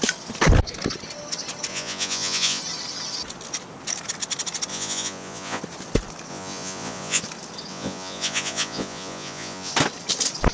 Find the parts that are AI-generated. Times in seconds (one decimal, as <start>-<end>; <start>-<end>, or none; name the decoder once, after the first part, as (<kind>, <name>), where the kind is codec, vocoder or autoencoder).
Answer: 1.7-2.6 (vocoder, Vocos); 4.7-5.6; 6.3-7.2; 7.7-9.7